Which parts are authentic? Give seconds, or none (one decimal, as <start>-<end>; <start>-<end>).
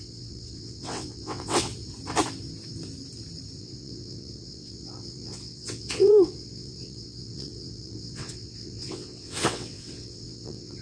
1.7-3.6